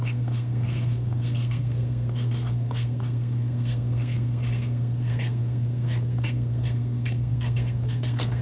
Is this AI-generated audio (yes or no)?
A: yes